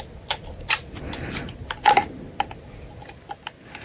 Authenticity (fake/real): real